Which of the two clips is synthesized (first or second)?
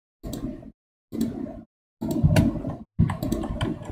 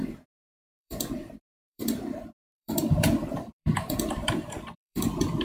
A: second